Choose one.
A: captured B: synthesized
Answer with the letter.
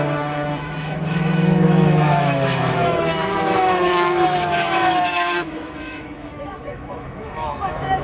B